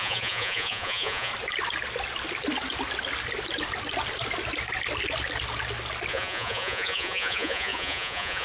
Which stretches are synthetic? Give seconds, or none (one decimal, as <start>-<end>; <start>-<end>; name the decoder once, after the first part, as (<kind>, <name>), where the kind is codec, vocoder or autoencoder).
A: 0.0-1.3 (vocoder, Vocos); 6.1-8.4